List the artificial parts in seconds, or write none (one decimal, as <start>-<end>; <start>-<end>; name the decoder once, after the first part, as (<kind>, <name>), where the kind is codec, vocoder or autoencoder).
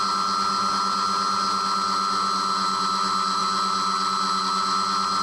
none